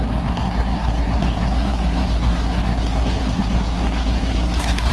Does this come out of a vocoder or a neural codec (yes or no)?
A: yes